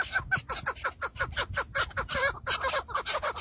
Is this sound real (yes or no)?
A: yes